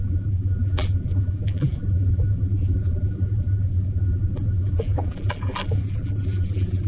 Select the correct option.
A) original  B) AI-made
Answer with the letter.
B